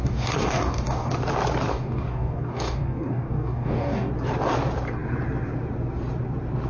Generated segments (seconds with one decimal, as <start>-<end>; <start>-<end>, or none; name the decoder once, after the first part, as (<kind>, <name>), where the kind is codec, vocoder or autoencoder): 0.0-1.1 (codec, DAC); 1.7-4.1